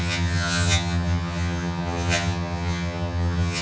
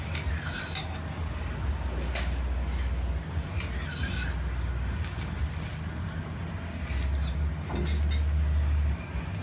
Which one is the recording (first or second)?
second